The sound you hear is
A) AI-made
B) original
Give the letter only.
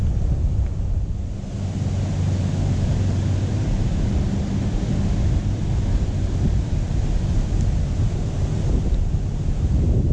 B